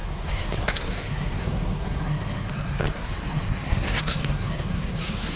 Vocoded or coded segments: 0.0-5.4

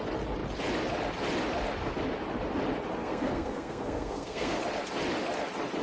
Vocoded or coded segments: 3.0-4.6

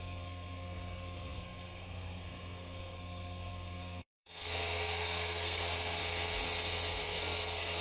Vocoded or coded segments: 0.0-6.0; 7.0-7.8

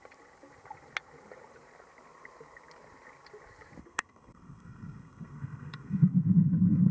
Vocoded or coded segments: 3.8-6.9